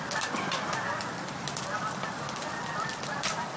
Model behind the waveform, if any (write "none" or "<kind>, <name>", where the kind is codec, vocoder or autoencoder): vocoder, BigVGAN v2